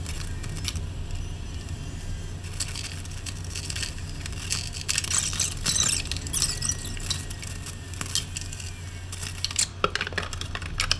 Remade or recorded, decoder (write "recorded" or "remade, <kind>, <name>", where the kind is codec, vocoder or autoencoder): recorded